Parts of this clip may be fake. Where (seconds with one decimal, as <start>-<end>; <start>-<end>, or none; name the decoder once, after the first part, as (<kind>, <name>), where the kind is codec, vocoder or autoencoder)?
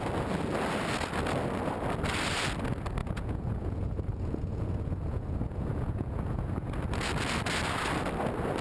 3.0-6.7 (vocoder, Vocos)